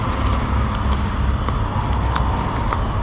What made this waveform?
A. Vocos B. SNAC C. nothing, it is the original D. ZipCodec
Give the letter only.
C